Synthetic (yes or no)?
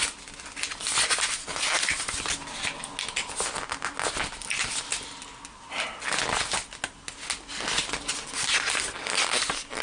no